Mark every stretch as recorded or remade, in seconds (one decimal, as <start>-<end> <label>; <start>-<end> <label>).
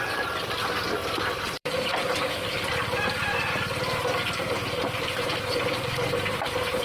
0.0-6.8 remade